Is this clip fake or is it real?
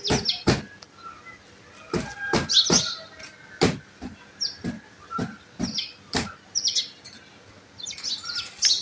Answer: real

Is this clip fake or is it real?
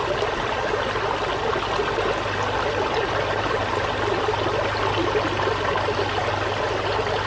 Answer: real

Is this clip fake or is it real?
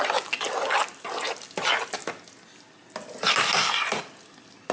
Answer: real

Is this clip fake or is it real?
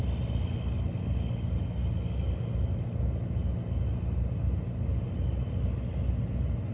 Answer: real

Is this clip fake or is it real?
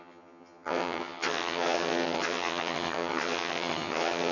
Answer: fake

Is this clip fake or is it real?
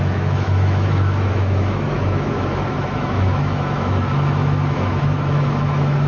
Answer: fake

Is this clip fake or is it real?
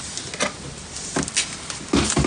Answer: real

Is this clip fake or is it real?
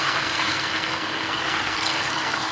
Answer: fake